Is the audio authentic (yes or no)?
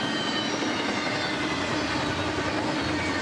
yes